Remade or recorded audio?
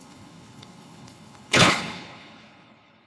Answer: remade